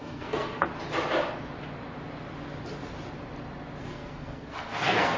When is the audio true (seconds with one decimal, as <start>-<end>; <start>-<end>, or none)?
0.7-3.8